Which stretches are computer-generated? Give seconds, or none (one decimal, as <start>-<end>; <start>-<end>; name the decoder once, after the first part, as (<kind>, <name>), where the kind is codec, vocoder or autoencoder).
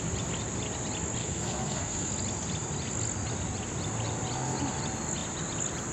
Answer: 1.2-2.1 (codec, SNAC)